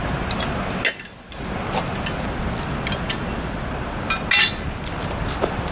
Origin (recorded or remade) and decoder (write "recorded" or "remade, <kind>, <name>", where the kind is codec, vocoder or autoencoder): recorded